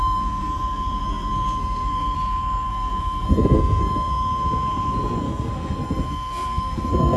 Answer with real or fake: fake